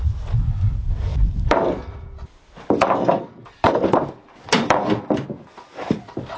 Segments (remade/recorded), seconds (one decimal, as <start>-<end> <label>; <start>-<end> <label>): 0.0-1.1 recorded; 1.1-4.9 remade; 4.9-6.4 recorded